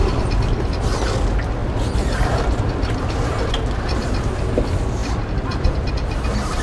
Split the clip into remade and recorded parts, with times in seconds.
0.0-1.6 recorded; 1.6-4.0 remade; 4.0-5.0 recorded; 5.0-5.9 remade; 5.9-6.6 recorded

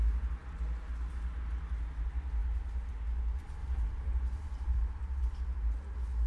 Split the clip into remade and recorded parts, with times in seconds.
0.0-3.6 recorded; 3.6-5.2 remade; 5.2-6.3 recorded

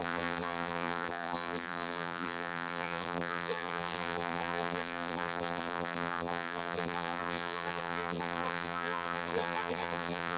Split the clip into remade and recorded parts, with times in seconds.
0.0-10.4 remade

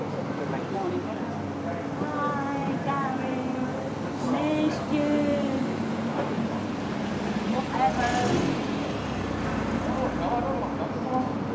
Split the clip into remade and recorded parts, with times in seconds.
0.0-2.6 recorded; 2.6-3.3 remade; 3.3-5.3 recorded; 5.3-7.1 remade; 7.1-11.5 recorded

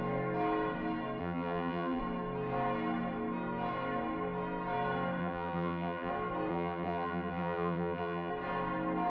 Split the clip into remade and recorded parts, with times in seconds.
0.0-1.2 recorded; 1.2-2.0 remade; 2.0-5.2 recorded; 5.2-6.1 remade; 6.1-6.5 recorded; 6.5-8.3 remade; 8.3-9.1 recorded

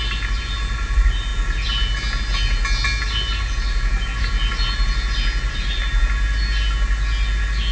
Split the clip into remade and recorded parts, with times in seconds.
0.0-7.7 recorded

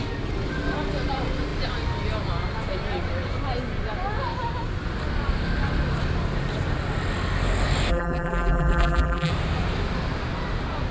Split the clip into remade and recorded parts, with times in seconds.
0.0-7.9 recorded; 7.9-9.3 remade; 9.3-10.9 recorded